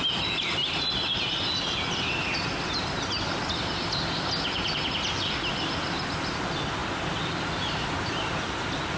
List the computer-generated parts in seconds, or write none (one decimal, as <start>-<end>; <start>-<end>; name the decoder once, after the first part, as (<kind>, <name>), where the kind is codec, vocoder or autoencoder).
none